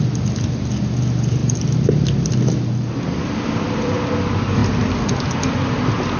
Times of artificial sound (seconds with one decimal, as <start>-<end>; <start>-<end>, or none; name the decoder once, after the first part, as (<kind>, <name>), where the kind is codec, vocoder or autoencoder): none